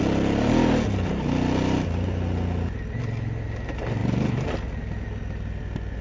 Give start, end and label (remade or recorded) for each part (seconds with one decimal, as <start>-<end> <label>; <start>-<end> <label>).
0.0-6.0 recorded